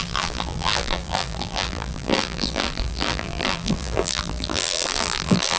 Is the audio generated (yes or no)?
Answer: yes